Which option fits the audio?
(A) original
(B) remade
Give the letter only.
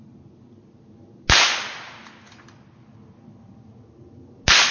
A